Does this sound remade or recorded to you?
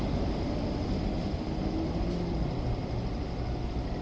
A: recorded